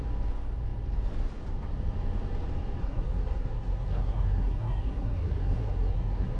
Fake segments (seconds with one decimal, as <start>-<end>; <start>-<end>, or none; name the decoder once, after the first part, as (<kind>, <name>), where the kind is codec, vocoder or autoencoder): 2.8-6.4 (codec, SNAC)